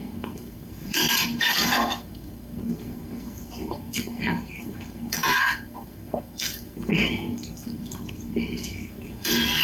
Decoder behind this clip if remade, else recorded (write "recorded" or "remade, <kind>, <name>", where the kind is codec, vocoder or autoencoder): remade, codec, SNAC